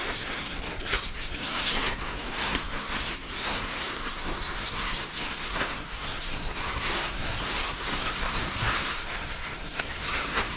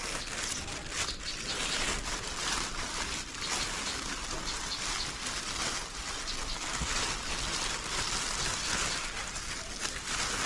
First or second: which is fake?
first